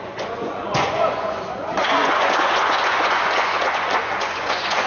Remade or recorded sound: remade